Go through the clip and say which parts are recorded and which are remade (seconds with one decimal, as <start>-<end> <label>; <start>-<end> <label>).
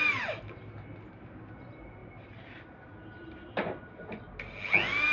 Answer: 0.0-5.1 recorded